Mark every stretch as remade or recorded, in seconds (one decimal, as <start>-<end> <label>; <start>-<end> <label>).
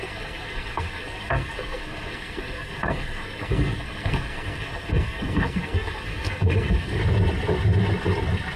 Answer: 0.0-7.0 remade; 7.0-8.6 recorded